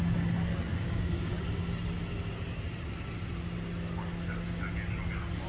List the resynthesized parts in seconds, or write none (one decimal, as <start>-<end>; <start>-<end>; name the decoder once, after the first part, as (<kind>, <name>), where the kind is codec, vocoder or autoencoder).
0.7-1.3 (codec, DAC)

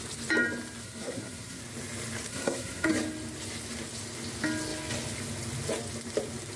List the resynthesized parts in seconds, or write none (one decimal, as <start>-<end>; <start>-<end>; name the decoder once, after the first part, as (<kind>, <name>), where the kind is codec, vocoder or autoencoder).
0.8-1.6 (codec, SNAC); 2.3-2.9

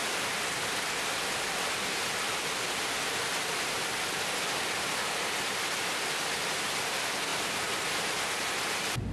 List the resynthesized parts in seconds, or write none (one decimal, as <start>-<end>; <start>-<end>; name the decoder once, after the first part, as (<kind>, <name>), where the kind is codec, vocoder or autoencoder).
none

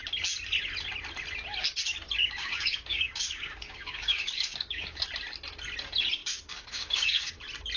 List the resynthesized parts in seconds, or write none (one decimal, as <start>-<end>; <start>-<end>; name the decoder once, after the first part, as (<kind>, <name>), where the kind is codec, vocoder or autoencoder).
2.2-5.1 (codec, DAC); 6.2-7.3

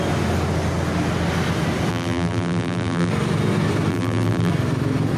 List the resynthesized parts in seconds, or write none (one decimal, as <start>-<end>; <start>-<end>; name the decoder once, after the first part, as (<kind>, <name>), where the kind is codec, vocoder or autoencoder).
1.9-3.1 (vocoder, BigVGAN v2); 3.9-4.5